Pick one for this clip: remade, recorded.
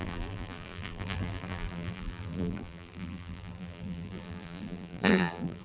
remade